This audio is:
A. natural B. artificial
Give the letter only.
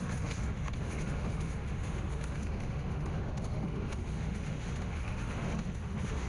B